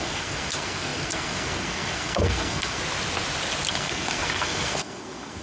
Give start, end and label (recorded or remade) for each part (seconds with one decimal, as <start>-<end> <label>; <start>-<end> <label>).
0.0-2.8 remade; 2.8-3.7 recorded; 3.7-5.4 remade